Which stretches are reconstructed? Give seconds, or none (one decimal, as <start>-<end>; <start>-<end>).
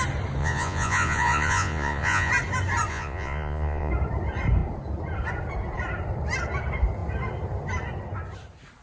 0.4-2.3; 2.9-3.9